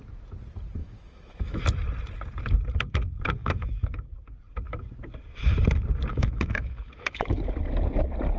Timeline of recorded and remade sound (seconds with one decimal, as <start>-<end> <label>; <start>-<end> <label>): 0.0-0.8 recorded; 0.8-1.6 remade; 1.6-3.4 recorded; 3.4-4.1 remade; 4.1-6.1 recorded; 6.1-7.4 remade; 7.4-8.4 recorded